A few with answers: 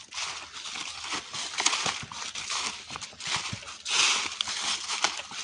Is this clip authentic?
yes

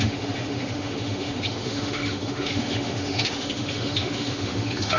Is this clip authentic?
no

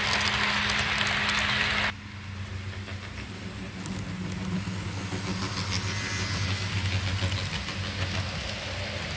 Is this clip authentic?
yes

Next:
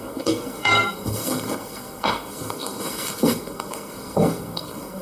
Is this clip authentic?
no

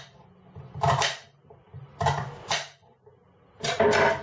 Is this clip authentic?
yes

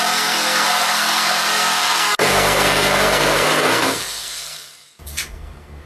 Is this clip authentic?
no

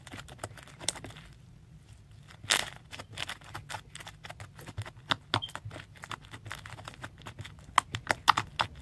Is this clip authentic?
yes